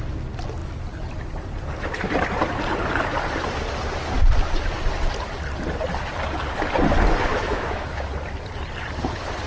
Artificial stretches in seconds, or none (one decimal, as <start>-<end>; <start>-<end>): 7.3-8.1